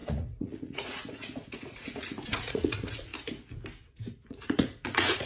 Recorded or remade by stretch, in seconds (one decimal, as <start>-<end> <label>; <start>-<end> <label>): 0.0-3.1 remade; 3.1-4.3 recorded; 4.3-5.3 remade